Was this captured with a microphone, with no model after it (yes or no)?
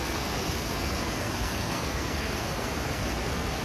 no